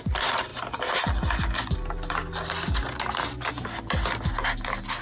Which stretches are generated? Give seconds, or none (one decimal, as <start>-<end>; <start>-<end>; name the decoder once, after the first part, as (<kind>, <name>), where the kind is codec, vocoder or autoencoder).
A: none